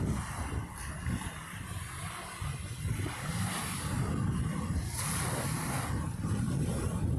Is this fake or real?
real